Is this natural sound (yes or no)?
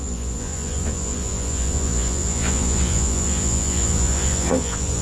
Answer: no